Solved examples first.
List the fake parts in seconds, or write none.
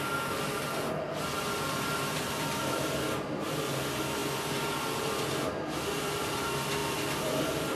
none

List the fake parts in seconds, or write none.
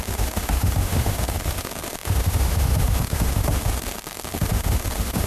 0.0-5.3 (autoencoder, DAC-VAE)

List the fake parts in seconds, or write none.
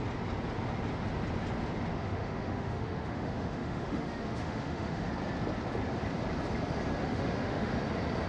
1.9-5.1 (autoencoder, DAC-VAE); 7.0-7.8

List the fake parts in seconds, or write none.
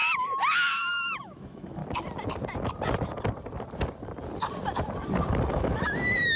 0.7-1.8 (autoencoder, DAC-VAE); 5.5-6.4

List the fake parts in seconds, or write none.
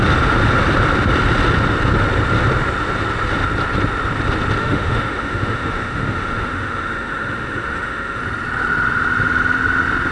4.6-8.2 (autoencoder, DAC-VAE)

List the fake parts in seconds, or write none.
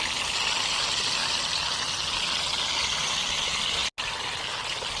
none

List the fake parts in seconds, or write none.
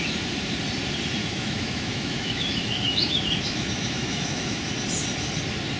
1.2-4.7 (autoencoder, DAC-VAE)